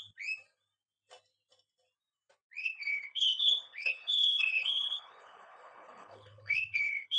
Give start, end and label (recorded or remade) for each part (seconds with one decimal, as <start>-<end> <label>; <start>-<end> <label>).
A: 0.0-2.6 recorded; 2.6-7.2 remade